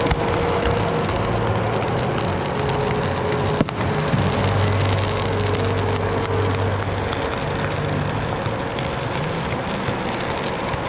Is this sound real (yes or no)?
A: yes